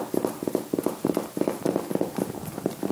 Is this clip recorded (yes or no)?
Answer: yes